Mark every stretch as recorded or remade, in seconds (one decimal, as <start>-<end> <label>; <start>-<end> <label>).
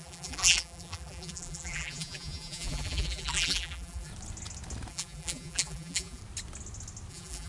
0.0-4.1 remade; 4.1-4.9 recorded; 4.9-6.2 remade; 6.2-7.1 recorded; 7.1-7.5 remade